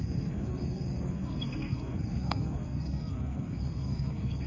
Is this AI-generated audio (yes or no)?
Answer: yes